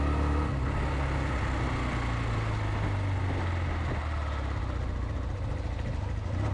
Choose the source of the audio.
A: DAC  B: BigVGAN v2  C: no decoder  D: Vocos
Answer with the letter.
C